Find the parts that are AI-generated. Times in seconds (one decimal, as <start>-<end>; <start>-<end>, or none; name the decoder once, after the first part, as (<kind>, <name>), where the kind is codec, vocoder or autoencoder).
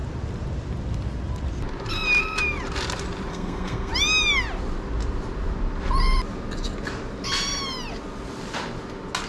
3.3-3.9 (codec, SNAC)